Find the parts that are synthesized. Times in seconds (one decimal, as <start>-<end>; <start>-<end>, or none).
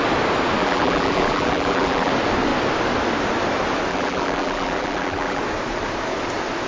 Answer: 0.6-2.1; 3.9-5.4